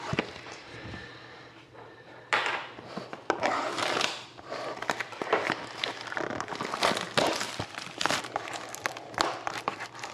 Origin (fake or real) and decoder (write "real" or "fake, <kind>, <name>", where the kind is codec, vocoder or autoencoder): fake, vocoder, BigVGAN v2